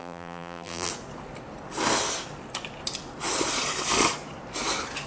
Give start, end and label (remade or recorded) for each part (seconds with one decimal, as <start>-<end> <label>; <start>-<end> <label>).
0.0-0.9 remade; 0.9-5.1 recorded